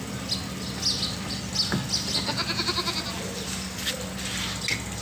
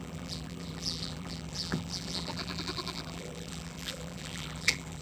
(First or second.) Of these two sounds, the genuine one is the first